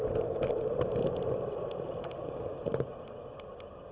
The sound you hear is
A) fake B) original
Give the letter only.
B